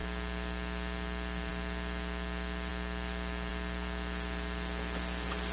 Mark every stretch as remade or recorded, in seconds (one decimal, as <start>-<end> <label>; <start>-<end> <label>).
0.0-5.5 recorded